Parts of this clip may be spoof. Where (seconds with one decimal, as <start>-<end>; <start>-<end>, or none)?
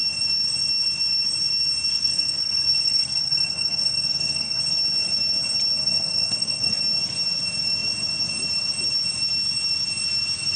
1.9-4.6; 5.8-6.8